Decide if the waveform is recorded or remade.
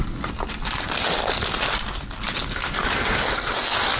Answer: recorded